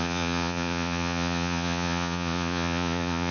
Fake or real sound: fake